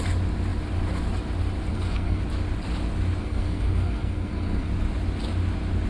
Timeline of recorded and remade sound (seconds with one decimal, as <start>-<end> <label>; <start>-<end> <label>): 0.0-1.7 recorded; 1.7-2.2 remade; 2.2-3.2 recorded; 3.2-4.7 remade; 4.7-5.9 recorded